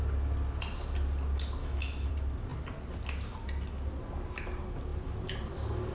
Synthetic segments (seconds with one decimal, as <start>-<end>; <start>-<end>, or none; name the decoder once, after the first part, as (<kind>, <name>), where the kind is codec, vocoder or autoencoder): 1.6-2.1 (autoencoder, DAC-VAE)